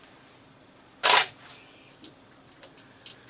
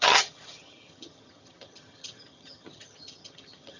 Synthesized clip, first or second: second